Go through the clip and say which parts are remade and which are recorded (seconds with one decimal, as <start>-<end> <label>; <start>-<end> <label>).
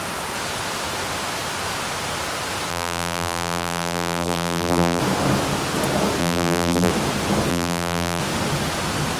0.0-2.7 recorded; 2.7-5.0 remade; 5.0-6.2 recorded; 6.2-6.9 remade; 6.9-7.5 recorded; 7.5-8.2 remade; 8.2-9.2 recorded